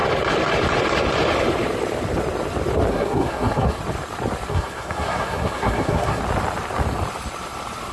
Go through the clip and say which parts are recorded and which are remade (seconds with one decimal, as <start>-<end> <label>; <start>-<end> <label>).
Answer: 0.0-2.9 recorded; 2.9-3.8 remade; 3.8-4.5 recorded; 4.5-6.2 remade; 6.2-7.9 recorded